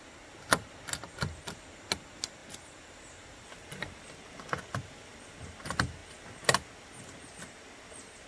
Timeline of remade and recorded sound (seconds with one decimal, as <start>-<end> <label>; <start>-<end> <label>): 0.0-2.4 recorded; 2.4-4.0 remade; 4.0-8.3 recorded